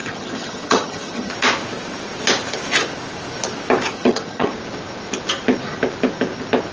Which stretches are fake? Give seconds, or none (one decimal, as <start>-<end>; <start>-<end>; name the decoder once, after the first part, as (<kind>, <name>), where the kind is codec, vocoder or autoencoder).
0.0-1.3 (vocoder, HiFi-GAN); 3.9-4.5